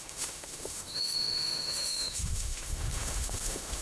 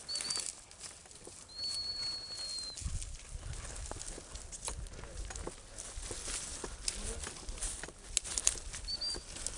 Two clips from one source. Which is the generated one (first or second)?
first